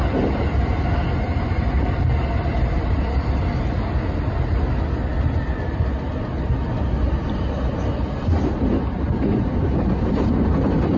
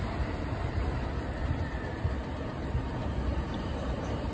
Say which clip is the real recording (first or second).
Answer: first